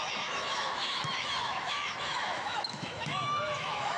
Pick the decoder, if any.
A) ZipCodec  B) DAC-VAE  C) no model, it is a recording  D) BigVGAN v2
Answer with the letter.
B